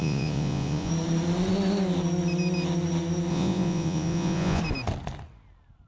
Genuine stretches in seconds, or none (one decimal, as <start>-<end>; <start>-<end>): 0.9-3.3; 4.6-5.9